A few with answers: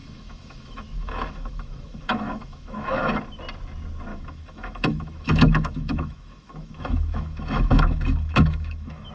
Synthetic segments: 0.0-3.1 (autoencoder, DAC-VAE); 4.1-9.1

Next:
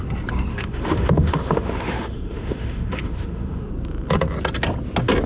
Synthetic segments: 0.5-3.7 (autoencoder, DAC-VAE)